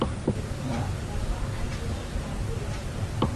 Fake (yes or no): no